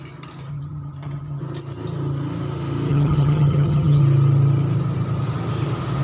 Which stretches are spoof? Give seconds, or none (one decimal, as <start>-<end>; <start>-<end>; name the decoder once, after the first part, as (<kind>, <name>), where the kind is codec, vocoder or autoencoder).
0.5-1.4 (vocoder, HiFi-GAN); 2.9-4.0